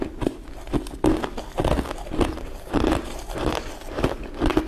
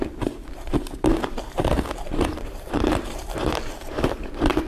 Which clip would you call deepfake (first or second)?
second